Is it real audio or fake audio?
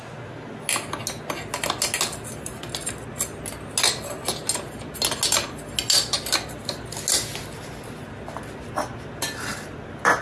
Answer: real